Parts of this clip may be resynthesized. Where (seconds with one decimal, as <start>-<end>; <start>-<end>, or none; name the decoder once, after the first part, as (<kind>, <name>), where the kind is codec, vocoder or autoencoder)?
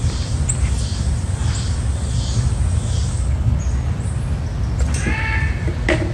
3.1-3.6 (codec, HILCodec)